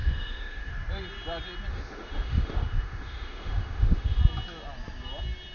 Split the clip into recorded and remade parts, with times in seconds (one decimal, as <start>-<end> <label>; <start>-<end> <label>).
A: 0.0-0.7 remade; 0.7-1.7 recorded; 1.7-4.2 remade; 4.2-5.5 recorded